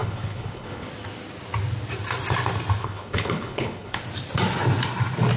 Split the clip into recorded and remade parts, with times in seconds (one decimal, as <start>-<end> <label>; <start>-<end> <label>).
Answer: 0.0-0.9 remade; 0.9-2.8 recorded; 2.8-4.0 remade; 4.0-5.4 recorded